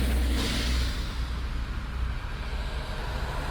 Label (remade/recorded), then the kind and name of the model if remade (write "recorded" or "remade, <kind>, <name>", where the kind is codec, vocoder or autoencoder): recorded